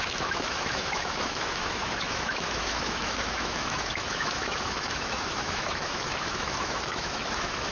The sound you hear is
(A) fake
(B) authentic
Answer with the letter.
A